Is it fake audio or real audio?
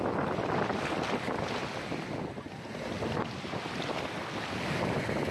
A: real